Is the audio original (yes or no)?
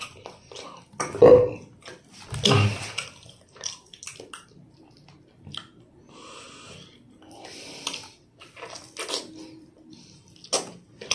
yes